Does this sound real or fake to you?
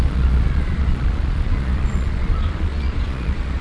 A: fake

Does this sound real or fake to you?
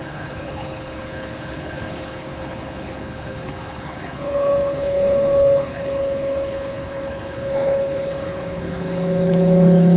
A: fake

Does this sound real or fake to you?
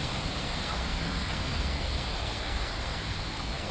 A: fake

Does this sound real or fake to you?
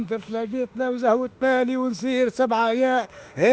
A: fake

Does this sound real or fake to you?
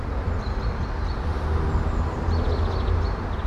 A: real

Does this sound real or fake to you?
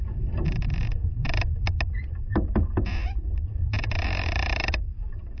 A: real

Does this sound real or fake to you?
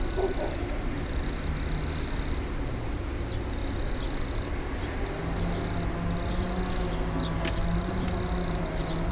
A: real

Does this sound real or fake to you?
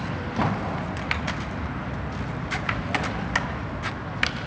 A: real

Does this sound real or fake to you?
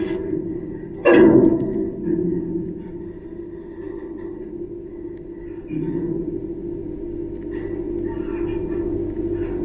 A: real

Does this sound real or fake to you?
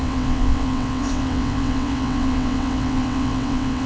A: fake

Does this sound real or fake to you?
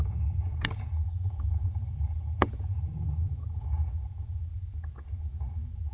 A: fake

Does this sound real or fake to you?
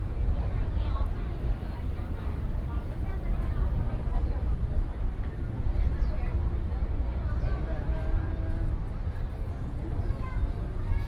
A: real